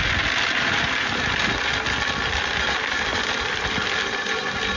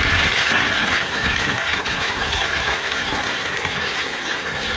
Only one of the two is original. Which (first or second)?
first